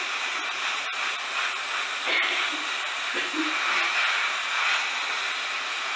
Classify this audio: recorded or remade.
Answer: recorded